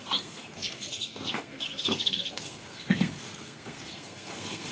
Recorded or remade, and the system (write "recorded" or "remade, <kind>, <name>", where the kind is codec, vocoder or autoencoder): remade, codec, SNAC